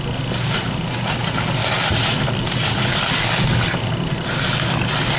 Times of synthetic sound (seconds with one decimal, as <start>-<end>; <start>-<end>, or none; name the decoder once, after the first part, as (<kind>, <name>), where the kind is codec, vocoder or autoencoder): 1.6-4.1 (vocoder, BigVGAN v2)